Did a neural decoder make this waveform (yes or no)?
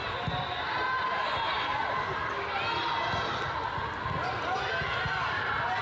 no